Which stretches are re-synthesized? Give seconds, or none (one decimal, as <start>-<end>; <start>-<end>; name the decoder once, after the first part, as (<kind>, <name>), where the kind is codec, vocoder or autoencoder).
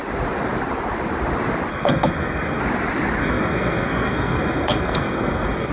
1.7-2.6 (codec, SNAC); 3.2-5.7